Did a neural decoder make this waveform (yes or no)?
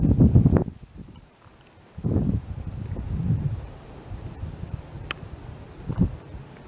no